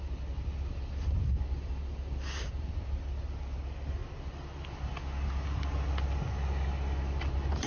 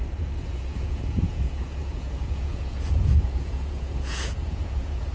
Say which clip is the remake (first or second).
second